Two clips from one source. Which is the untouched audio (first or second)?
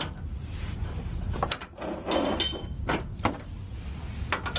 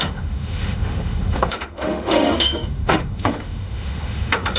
first